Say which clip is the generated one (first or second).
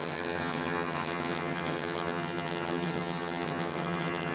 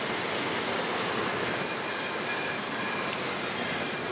first